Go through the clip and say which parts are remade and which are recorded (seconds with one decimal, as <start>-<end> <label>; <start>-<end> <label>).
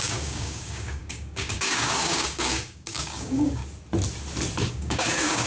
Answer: 0.0-3.6 remade; 3.6-4.7 recorded; 4.7-5.5 remade